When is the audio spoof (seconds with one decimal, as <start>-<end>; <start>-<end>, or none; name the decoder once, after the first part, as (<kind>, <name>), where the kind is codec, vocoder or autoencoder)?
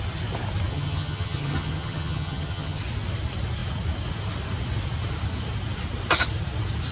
0.7-2.8 (vocoder, HiFi-GAN)